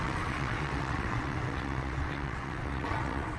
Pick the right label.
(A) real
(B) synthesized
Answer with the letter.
B